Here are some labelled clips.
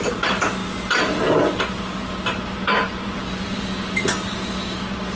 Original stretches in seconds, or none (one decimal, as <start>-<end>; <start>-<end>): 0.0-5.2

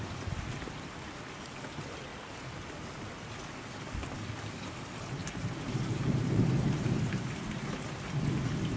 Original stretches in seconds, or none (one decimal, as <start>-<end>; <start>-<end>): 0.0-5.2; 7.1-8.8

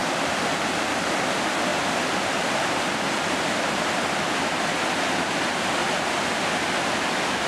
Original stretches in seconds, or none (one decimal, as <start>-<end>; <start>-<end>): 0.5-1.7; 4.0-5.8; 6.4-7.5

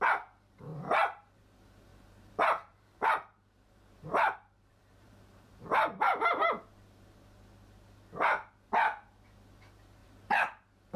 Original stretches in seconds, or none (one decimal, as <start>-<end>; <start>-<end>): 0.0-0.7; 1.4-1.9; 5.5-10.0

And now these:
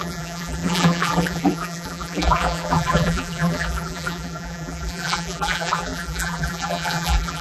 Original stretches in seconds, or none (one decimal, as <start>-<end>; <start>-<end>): none

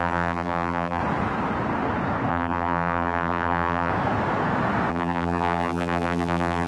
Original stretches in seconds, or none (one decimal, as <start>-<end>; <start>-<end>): 1.0-2.3; 3.9-4.9